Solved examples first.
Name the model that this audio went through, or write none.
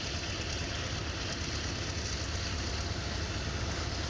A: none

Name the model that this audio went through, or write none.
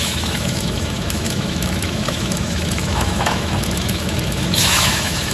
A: autoencoder, DAC-VAE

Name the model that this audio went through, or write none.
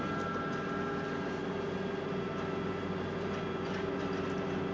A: none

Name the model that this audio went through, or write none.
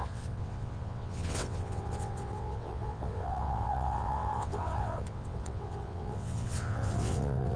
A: vocoder, WaveNeXt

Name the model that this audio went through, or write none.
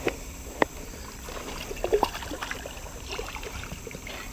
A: none